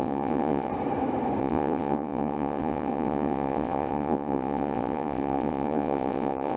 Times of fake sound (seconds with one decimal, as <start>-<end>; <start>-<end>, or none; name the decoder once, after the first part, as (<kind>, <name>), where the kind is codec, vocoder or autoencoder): 0.0-0.7 (vocoder, WaveNeXt); 1.4-6.6